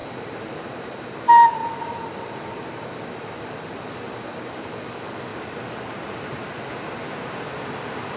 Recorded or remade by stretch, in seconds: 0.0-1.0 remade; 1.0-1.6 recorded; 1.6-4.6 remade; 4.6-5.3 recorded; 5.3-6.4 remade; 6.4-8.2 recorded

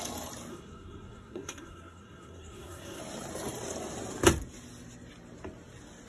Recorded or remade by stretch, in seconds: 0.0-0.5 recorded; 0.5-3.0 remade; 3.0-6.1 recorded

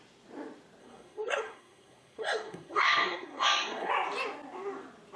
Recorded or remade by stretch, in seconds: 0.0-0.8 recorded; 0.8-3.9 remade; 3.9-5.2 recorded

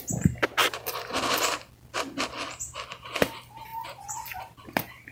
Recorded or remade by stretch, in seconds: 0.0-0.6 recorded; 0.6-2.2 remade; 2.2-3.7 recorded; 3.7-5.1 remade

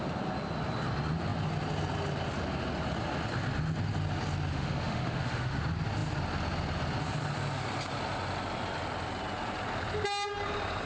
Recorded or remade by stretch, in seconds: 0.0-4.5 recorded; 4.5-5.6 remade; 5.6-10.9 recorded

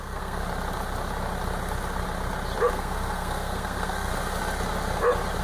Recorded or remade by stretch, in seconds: 0.0-0.4 remade; 0.4-2.7 recorded; 2.7-4.1 remade; 4.1-5.4 recorded